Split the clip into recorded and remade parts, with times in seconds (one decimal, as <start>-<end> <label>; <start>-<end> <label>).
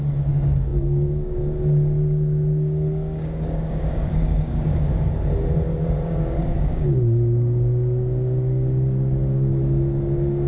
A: 0.0-10.5 remade